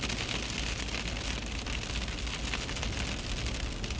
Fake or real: real